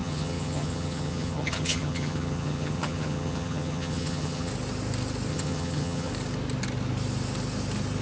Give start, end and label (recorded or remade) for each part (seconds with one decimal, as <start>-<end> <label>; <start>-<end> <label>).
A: 0.0-4.5 remade; 4.5-5.3 recorded; 5.3-6.1 remade; 6.1-8.0 recorded